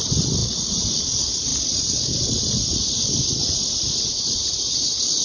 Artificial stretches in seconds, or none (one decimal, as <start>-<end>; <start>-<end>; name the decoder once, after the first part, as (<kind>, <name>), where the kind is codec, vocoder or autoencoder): none